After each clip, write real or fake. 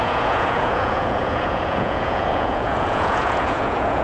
fake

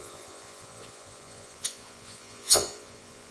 fake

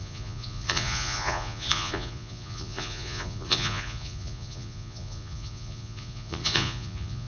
fake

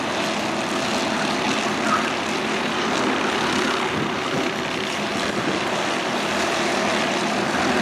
real